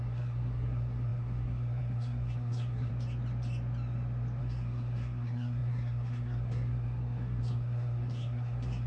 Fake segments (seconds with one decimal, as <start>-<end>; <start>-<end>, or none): 0.0-2.9; 4.4-8.9